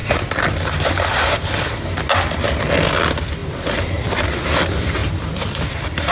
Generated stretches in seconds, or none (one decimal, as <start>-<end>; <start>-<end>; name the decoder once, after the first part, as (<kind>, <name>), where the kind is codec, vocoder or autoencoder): 3.4-4.1 (vocoder, BigVGAN v2); 5.0-6.1